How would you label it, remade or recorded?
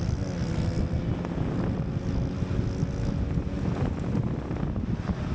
recorded